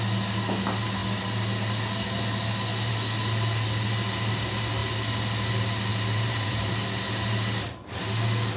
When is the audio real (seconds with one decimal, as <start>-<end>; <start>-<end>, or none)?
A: 0.0-5.9; 6.7-8.6